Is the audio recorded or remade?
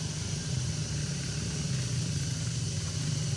recorded